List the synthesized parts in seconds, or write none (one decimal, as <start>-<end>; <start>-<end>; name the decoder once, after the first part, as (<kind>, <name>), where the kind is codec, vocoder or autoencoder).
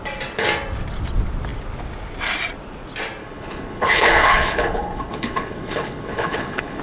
3.2-6.8 (codec, HILCodec)